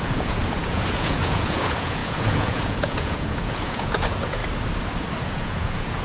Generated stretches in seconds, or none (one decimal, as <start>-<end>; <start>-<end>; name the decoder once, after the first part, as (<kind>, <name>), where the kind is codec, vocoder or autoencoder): 0.0-4.4 (vocoder, Vocos); 5.2-6.0